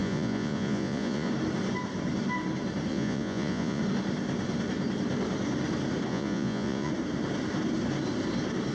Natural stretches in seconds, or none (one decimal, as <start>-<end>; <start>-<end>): 1.3-2.9; 3.8-6.1; 6.9-8.7